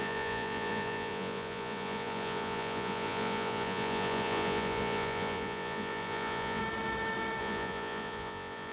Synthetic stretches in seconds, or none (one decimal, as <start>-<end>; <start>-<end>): 0.0-6.6; 7.4-8.7

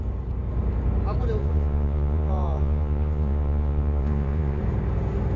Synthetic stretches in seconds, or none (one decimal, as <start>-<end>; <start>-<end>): 1.4-4.6

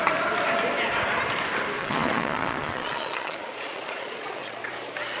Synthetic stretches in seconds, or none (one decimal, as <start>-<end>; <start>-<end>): 1.8-4.6

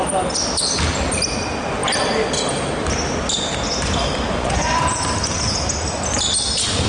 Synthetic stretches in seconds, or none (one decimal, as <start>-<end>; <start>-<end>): 4.3-4.8

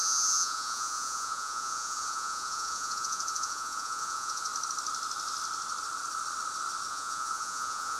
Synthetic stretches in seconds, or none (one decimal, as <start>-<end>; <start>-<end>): 0.0-4.5; 6.9-8.0

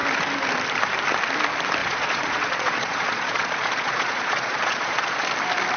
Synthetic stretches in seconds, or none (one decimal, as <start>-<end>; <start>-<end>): 1.8-5.3

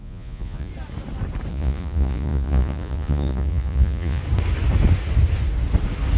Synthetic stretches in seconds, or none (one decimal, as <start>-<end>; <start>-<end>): 0.0-0.7; 1.5-4.2